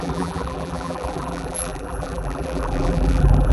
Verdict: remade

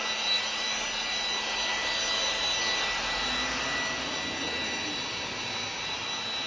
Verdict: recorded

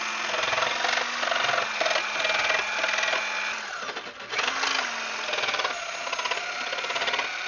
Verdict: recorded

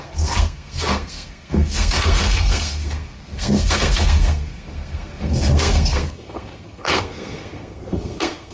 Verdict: remade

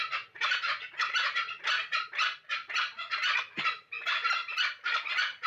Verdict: recorded